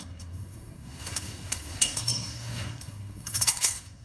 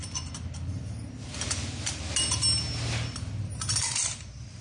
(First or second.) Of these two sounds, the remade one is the first